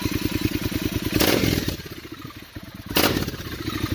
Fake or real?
real